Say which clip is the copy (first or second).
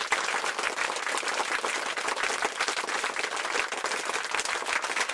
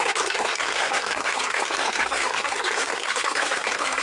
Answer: second